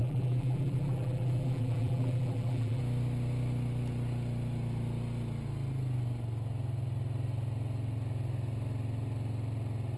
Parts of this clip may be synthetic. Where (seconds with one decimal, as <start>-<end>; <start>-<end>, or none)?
0.0-2.8